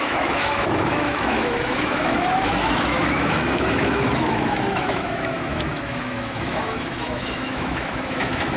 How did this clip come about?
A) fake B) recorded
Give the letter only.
A